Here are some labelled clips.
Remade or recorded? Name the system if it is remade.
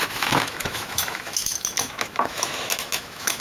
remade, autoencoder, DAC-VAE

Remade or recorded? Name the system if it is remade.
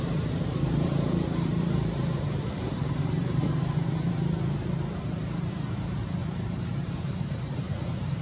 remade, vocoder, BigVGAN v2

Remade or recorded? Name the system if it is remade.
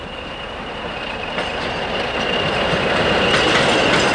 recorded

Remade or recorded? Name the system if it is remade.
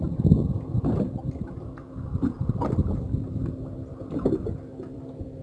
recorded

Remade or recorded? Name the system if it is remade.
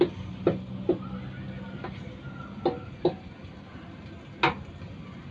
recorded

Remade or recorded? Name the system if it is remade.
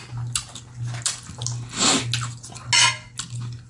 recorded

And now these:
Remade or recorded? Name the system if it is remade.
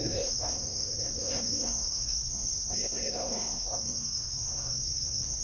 remade, codec, SNAC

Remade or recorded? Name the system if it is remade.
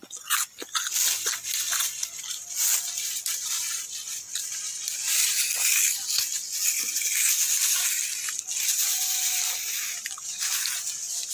recorded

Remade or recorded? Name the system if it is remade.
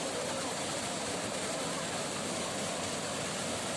recorded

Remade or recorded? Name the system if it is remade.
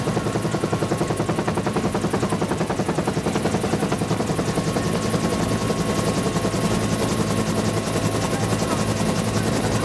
recorded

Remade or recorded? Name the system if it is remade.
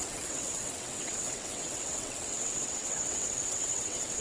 remade, vocoder, WaveNeXt